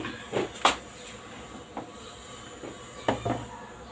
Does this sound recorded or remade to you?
recorded